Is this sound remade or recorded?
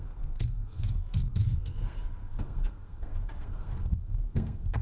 remade